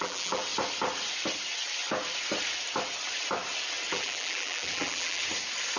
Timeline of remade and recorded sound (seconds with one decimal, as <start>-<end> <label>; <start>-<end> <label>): 0.0-0.4 remade; 0.4-3.9 recorded; 3.9-5.2 remade; 5.2-5.8 recorded